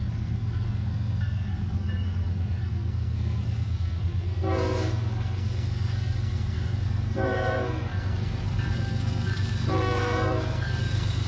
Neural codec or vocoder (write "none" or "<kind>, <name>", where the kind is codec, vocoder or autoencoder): codec, SNAC